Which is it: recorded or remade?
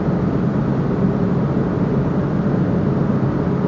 recorded